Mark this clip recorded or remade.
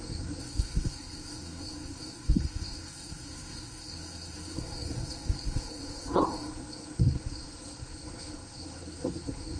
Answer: remade